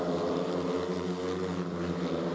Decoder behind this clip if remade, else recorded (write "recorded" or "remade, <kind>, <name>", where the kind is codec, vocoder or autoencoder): recorded